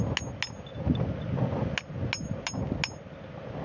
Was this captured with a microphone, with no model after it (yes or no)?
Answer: yes